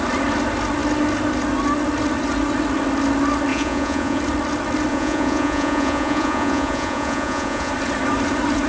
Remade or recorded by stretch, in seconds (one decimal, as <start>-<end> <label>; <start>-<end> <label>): 0.0-3.5 recorded; 3.5-4.2 remade; 4.2-4.9 recorded; 4.9-7.7 remade; 7.7-8.7 recorded